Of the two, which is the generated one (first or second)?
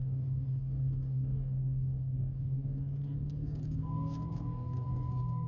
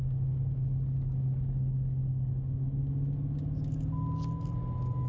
first